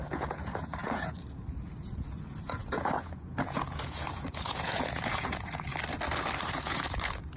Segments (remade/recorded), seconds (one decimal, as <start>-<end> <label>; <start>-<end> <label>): 0.0-5.7 remade; 5.7-6.5 recorded; 6.5-7.4 remade